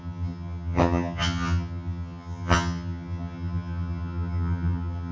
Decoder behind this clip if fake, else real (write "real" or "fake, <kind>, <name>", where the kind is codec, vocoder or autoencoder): fake, vocoder, HiFi-GAN